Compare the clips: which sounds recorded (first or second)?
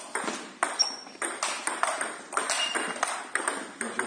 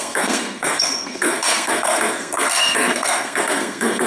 first